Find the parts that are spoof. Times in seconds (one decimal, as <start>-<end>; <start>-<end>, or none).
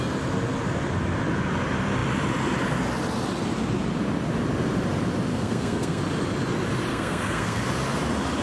5.3-6.0; 6.9-7.6